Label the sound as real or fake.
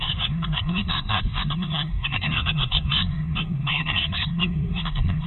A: fake